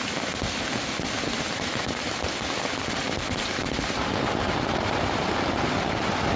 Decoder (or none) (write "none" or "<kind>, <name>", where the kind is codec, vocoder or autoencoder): none